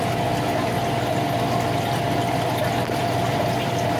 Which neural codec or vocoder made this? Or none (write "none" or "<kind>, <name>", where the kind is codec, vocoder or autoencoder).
none